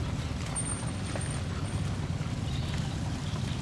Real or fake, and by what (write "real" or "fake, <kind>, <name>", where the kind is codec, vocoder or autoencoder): real